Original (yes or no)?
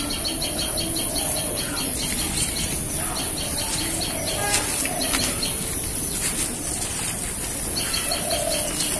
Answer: yes